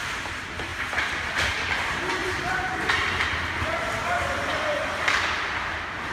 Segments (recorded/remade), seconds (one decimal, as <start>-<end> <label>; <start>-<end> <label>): 0.0-0.7 recorded; 0.7-1.5 remade; 1.5-2.2 recorded; 2.2-2.9 remade; 2.9-4.5 recorded; 4.5-5.1 remade; 5.1-6.1 recorded